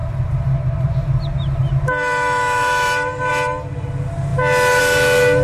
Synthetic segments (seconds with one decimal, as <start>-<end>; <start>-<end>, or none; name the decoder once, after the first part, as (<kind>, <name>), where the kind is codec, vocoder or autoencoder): 0.0-1.2 (vocoder, BigVGAN v2); 1.6-3.3